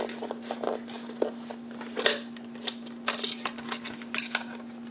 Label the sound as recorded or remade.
recorded